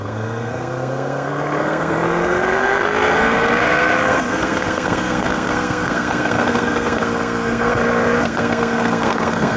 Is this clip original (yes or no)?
no